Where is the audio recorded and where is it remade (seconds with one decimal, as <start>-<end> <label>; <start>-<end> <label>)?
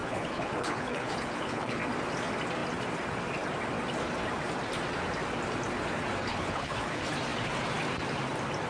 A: 0.0-1.8 remade; 1.8-6.2 recorded; 6.2-7.0 remade; 7.0-8.7 recorded